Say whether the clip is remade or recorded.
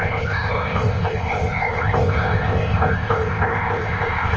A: remade